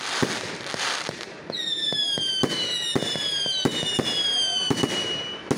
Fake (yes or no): no